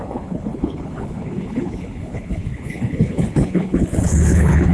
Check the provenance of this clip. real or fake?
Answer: fake